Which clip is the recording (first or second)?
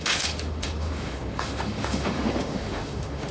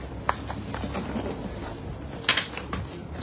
second